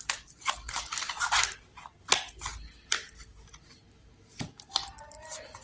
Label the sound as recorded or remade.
recorded